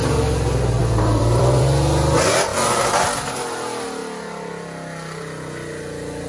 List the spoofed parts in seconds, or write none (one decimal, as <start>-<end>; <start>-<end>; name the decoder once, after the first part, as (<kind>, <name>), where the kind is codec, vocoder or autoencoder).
0.8-1.6 (vocoder, BigVGAN v2)